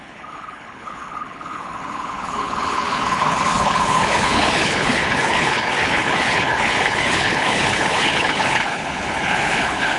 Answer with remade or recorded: remade